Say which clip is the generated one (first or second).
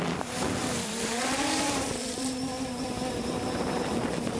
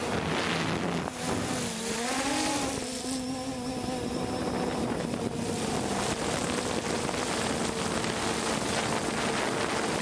first